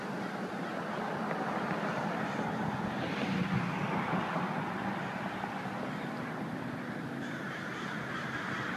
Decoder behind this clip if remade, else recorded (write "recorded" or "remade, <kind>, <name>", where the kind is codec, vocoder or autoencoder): recorded